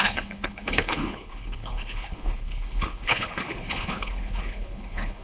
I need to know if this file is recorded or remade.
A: remade